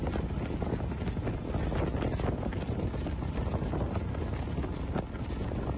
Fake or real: real